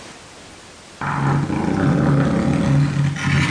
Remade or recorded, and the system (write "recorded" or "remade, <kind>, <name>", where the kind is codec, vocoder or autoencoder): recorded